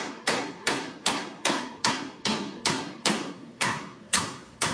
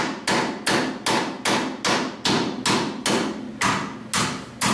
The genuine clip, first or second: second